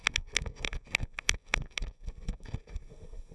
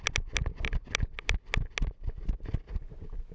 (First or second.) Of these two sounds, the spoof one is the first